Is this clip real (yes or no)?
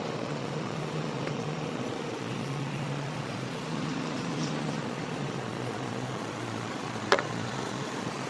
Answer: no